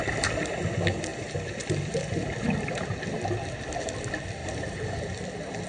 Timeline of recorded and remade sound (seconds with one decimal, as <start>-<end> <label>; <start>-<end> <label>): 0.0-1.1 recorded; 1.1-3.2 remade; 3.2-4.4 recorded; 4.4-5.0 remade; 5.0-5.7 recorded